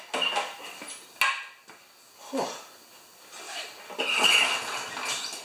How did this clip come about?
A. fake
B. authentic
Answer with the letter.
B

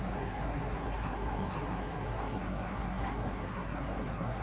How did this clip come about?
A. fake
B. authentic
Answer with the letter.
A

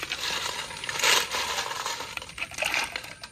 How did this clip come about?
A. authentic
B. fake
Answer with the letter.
A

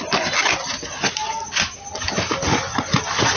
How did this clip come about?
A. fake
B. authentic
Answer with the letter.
B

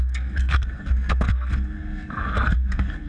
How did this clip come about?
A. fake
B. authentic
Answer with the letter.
A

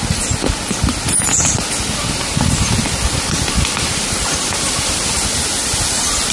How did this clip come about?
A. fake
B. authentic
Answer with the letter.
B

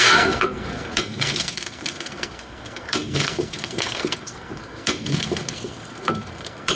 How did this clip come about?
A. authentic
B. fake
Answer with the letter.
B